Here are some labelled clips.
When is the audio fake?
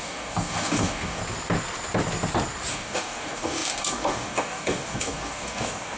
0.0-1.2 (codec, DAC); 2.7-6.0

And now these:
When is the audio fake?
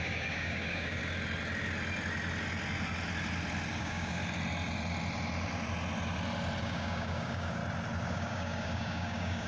0.0-1.0 (codec, DAC); 3.8-4.2; 6.6-7.6; 8.1-9.5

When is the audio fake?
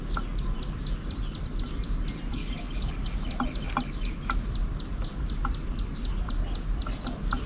2.3-2.9 (codec, DAC)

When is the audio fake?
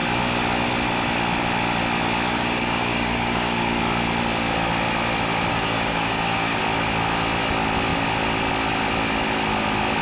2.3-3.8 (codec, DAC); 5.5-6.6